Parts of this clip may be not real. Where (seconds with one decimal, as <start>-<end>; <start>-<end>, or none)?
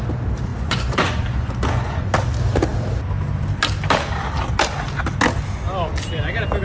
0.5-2.1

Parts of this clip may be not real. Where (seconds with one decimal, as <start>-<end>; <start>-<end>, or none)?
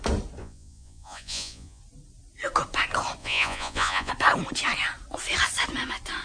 0.4-1.8; 3.2-4.1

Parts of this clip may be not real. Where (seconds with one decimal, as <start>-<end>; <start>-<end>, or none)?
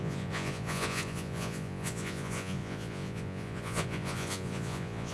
0.0-5.1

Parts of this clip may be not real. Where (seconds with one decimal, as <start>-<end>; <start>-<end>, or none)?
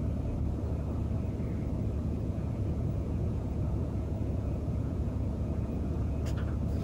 2.0-6.1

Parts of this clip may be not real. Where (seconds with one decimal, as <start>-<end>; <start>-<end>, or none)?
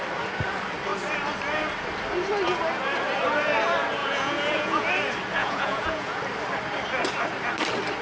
4.0-4.9; 5.4-6.2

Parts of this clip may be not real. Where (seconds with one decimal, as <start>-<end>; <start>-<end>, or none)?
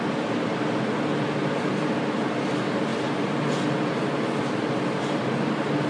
none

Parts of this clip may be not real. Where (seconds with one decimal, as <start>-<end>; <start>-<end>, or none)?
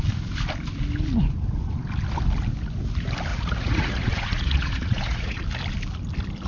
3.3-5.4